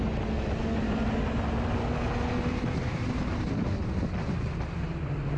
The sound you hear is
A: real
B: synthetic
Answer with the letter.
A